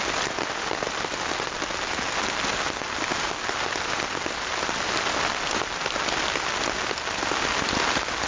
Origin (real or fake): real